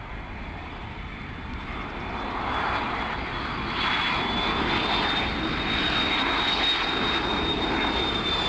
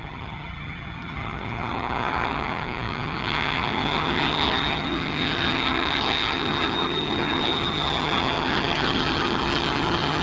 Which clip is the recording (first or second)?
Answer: first